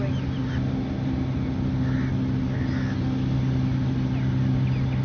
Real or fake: real